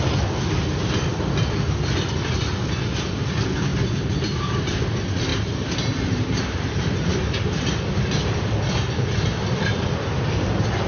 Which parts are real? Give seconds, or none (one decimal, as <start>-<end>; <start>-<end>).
0.0-5.3; 7.7-10.9